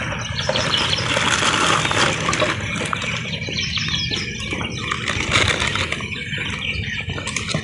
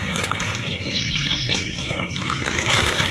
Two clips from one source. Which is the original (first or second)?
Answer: first